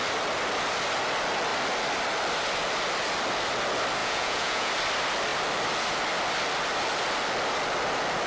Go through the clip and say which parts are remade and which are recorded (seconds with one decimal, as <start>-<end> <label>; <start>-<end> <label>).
0.0-4.0 recorded; 4.0-4.7 remade; 4.7-8.3 recorded